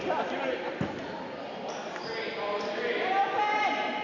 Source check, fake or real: real